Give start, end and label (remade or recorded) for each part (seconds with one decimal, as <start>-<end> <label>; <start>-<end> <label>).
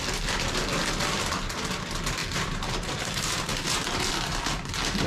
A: 0.0-2.2 recorded; 2.2-4.1 remade; 4.1-5.1 recorded